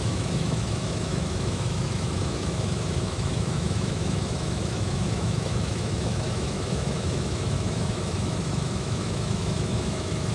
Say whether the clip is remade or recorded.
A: remade